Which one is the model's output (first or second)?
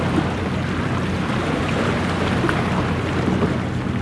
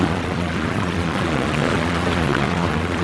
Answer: second